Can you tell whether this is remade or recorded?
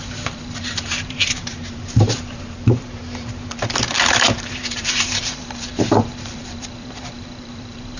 remade